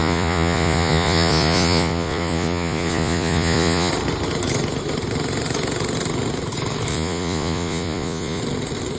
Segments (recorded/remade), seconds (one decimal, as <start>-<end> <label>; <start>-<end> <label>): 0.0-3.9 remade; 3.9-6.9 recorded; 6.9-8.4 remade; 8.4-9.0 recorded